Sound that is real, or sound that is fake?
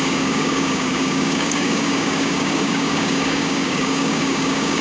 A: fake